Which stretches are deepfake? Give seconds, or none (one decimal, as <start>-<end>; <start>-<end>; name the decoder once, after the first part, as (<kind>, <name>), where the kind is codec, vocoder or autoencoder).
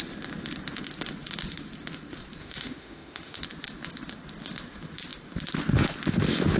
2.4-3.4 (autoencoder, DAC-VAE)